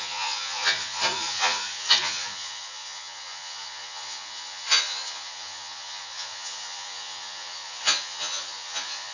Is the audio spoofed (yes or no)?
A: yes